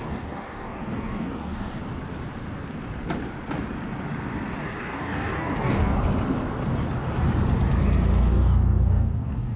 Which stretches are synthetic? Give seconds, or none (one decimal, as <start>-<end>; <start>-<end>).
0.0-1.8; 4.8-5.9; 8.2-9.6